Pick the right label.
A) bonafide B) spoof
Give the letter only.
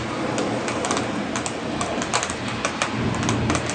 A